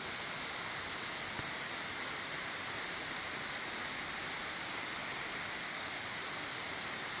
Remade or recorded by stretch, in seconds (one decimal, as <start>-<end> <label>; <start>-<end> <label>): 0.0-5.0 remade; 5.0-6.3 recorded; 6.3-7.2 remade